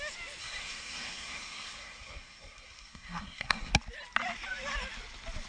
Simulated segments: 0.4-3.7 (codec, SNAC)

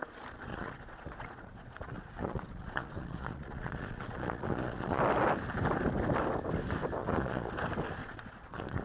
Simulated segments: 0.5-5.0 (vocoder, Vocos); 7.0-7.5; 8.0-8.8